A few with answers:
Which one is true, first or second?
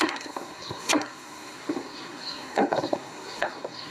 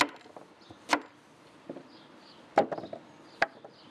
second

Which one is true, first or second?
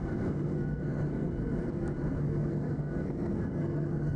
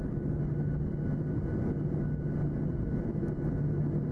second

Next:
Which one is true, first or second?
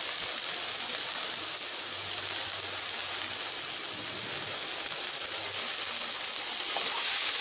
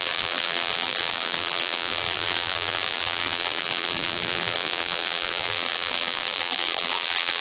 first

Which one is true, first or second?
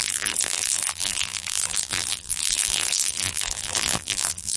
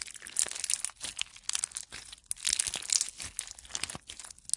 second